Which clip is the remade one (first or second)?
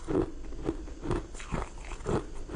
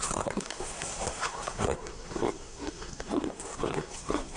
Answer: second